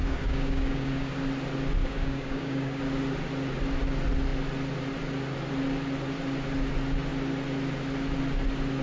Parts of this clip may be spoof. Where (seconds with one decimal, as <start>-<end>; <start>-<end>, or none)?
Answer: 0.0-1.1; 1.8-2.8